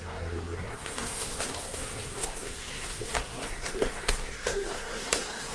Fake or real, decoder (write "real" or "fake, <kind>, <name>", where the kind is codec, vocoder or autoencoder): fake, codec, SNAC